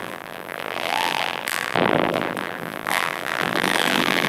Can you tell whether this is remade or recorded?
remade